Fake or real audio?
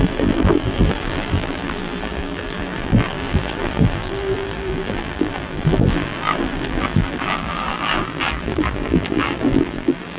fake